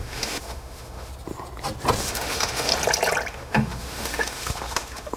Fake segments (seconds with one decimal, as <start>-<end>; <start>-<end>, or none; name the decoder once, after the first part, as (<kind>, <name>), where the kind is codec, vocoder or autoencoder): 0.0-1.1 (autoencoder, DAC-VAE); 2.0-2.7; 3.3-5.2